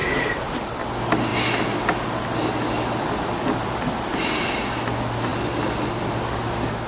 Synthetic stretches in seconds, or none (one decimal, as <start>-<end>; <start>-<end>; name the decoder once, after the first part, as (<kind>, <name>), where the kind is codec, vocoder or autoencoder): none

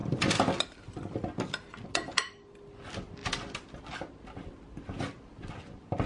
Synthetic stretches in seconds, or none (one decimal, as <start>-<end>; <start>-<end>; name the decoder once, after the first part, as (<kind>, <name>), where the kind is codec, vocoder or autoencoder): 3.2-3.8 (vocoder, BigVGAN v2)

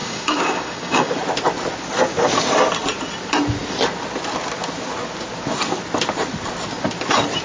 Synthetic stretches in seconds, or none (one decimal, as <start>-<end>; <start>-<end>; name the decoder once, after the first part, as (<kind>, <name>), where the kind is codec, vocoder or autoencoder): 0.0-1.1 (codec, DAC)

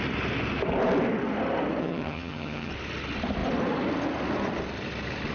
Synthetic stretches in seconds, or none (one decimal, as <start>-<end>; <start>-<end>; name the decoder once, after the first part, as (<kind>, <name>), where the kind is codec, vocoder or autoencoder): 1.8-2.7 (vocoder, HiFi-GAN)